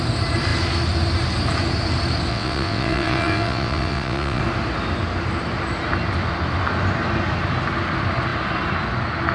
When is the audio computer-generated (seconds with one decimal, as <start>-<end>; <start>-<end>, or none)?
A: 2.3-4.4

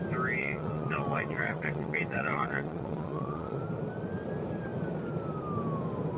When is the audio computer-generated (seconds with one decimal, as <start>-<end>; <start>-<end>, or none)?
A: 0.4-3.6

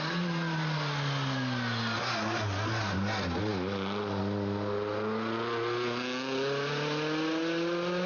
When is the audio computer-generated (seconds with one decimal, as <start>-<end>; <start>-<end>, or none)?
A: none

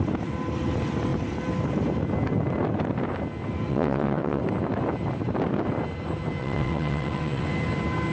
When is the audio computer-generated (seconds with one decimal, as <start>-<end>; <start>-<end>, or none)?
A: 3.7-4.4; 6.4-7.5

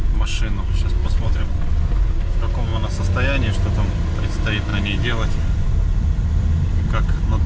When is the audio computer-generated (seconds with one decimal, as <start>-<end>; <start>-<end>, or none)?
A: 1.0-1.8

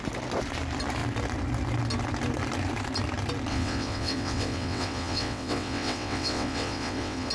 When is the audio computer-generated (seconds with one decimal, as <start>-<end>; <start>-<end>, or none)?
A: 3.5-7.3